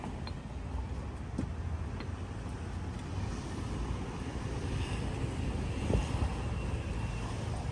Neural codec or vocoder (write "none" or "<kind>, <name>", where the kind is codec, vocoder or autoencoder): none